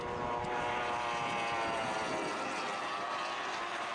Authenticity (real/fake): real